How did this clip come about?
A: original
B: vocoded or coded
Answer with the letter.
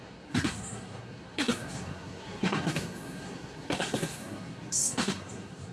B